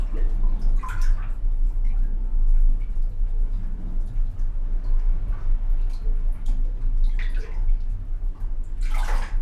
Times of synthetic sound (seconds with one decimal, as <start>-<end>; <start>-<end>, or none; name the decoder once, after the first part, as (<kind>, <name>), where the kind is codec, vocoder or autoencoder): none